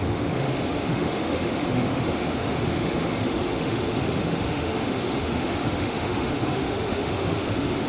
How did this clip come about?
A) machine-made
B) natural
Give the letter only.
A